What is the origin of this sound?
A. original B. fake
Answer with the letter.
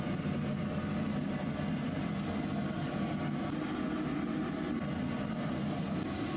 A